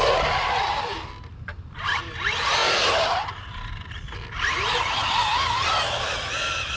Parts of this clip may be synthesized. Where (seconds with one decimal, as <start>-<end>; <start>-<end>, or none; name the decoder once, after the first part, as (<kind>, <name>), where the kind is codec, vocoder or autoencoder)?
none